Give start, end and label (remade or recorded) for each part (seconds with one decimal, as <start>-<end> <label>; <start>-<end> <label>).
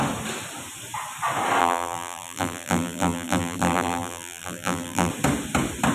0.0-1.6 recorded; 1.6-5.1 remade; 5.1-5.9 recorded